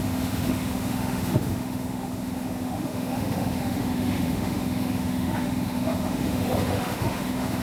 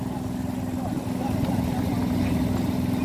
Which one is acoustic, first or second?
second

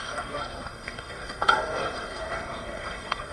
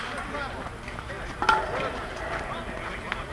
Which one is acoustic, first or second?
second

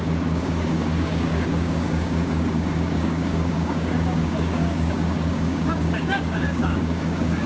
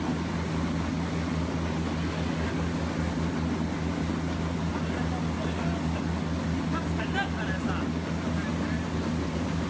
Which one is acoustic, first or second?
second